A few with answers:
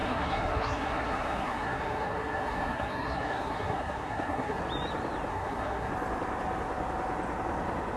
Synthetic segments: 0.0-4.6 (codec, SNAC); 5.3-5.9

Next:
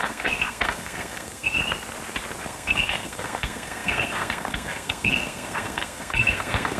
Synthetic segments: 0.0-1.6 (codec, SNAC); 2.4-6.8

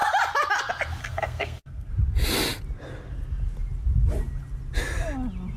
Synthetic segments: 1.0-1.9 (codec, SNAC)